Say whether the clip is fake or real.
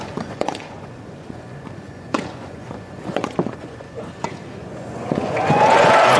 fake